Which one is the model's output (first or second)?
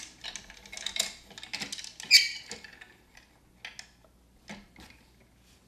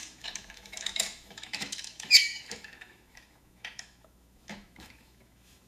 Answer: second